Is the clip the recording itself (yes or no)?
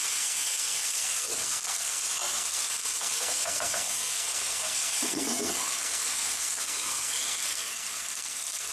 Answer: no